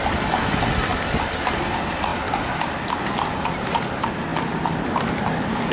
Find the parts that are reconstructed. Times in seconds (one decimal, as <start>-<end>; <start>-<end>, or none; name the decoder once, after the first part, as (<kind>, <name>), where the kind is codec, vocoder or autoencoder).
none